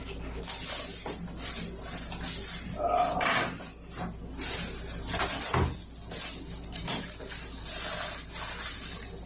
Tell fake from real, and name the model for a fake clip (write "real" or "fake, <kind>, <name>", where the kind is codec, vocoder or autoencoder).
real